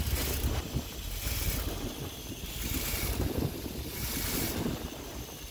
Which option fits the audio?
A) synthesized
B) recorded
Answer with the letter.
B